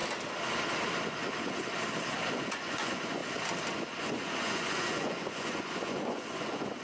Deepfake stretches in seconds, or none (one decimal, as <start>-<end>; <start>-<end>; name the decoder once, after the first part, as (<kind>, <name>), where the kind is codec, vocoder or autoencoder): 2.3-3.2 (vocoder, Vocos); 4.0-6.8